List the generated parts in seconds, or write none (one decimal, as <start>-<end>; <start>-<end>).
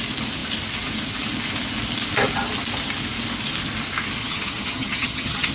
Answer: 4.2-5.5